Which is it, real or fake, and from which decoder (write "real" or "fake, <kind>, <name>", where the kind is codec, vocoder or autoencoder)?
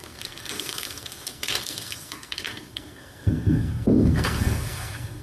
fake, codec, SNAC